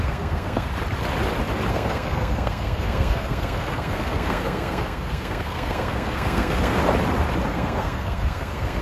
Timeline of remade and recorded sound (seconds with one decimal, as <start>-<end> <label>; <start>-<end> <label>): 0.0-0.7 remade; 0.7-1.7 recorded; 1.7-6.8 remade; 6.8-7.5 recorded; 7.5-8.8 remade